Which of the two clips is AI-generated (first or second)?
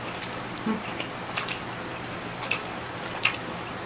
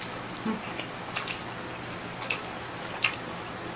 first